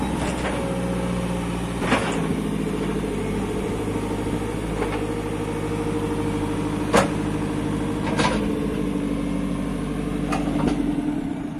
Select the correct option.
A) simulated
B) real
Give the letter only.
B